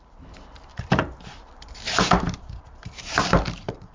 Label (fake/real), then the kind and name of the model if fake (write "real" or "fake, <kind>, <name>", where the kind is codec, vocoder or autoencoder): fake, vocoder, BigVGAN v2